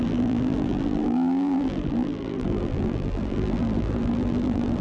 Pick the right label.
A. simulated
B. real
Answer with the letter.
A